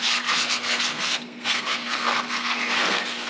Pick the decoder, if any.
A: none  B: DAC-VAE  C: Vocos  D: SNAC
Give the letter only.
D